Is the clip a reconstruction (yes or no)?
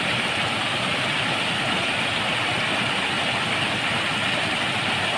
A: no